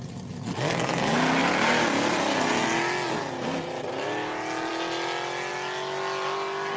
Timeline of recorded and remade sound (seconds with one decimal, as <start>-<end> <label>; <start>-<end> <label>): 0.0-6.8 recorded